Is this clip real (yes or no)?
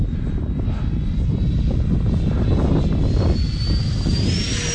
yes